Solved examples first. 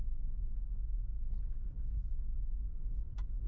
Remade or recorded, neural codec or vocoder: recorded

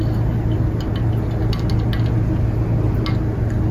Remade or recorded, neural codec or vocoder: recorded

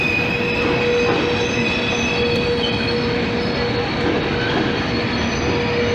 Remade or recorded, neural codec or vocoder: recorded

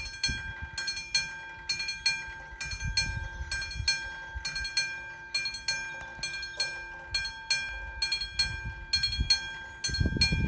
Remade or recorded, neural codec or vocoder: recorded